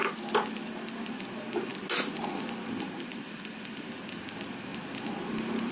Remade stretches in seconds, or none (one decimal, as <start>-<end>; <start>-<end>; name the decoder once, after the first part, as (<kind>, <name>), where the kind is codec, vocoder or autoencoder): 0.5-1.7 (vocoder, BigVGAN v2); 2.7-5.7